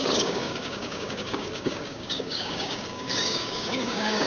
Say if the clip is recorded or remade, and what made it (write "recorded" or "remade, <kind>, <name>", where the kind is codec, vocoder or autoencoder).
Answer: remade, codec, DAC